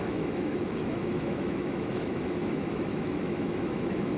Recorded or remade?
remade